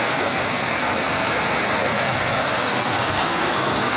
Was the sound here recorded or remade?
remade